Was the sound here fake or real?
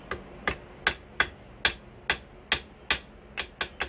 real